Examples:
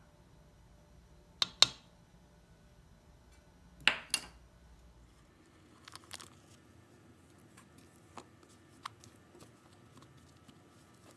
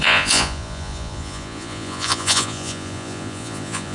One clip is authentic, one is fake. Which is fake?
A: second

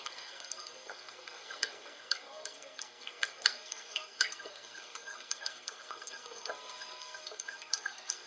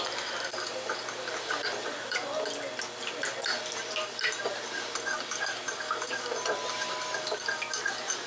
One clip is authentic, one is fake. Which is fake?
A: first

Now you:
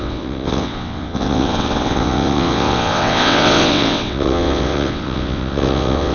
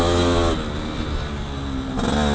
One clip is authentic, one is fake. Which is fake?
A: first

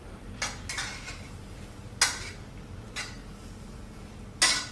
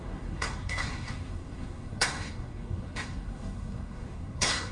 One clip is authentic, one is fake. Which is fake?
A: second